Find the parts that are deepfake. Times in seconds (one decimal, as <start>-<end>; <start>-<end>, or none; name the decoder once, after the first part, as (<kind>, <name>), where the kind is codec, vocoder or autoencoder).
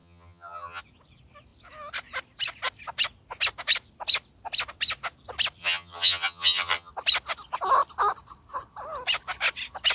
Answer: 0.0-0.8 (vocoder, HiFi-GAN); 5.6-6.9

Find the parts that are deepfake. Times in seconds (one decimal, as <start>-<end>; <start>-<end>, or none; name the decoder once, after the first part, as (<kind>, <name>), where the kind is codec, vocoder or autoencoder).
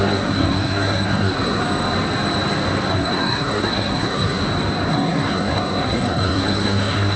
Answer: 0.0-1.6 (codec, SNAC); 2.9-4.4; 4.9-7.2